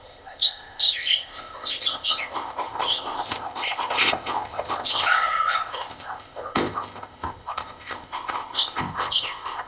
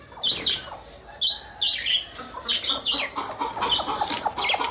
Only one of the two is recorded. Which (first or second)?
second